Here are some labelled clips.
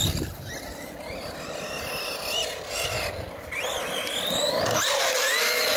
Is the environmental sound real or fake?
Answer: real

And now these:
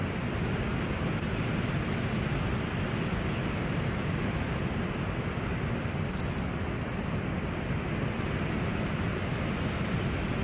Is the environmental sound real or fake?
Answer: real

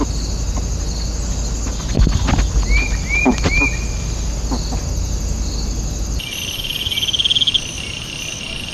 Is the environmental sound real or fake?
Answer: real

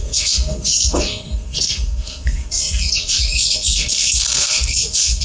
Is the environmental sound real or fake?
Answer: fake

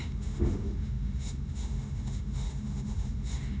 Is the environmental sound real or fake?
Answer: fake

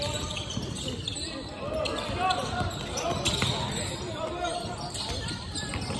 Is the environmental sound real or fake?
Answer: fake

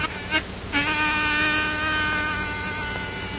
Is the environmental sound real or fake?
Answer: real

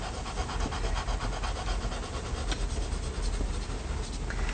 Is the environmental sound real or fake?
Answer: real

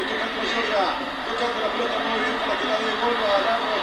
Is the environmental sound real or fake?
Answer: real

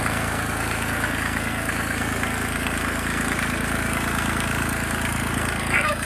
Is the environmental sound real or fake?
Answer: fake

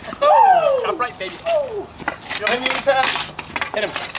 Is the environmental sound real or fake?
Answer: real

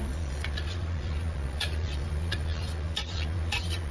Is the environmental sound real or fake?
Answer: fake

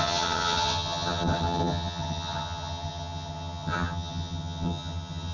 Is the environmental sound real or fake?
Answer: fake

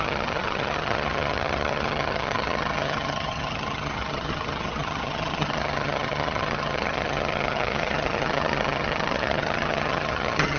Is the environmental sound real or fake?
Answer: fake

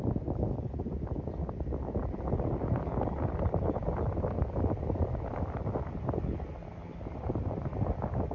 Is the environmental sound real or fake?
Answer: real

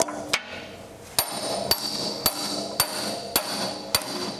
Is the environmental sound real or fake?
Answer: real